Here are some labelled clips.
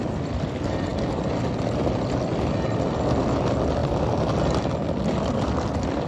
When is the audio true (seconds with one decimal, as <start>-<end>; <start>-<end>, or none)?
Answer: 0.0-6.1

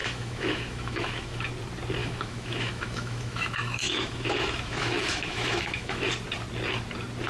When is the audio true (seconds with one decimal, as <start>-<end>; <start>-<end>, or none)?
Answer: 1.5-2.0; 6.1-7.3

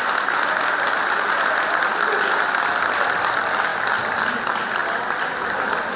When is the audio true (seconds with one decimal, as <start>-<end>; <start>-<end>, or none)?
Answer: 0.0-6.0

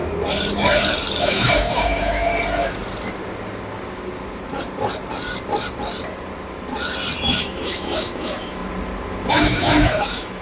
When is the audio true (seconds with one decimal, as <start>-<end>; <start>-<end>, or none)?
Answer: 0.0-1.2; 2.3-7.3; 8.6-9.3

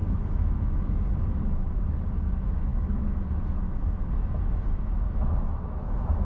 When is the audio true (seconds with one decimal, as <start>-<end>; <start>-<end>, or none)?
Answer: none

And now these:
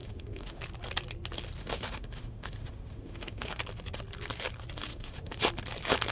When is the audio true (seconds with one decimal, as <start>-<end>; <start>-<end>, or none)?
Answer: 0.6-1.6; 3.6-4.9; 5.4-6.1

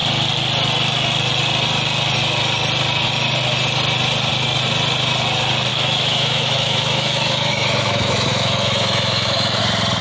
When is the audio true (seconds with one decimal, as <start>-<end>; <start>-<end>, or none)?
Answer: 0.0-5.7; 9.6-10.0

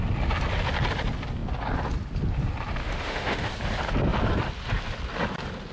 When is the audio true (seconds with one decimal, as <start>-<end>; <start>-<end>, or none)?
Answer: 0.0-2.8; 3.5-5.7